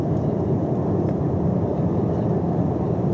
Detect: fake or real fake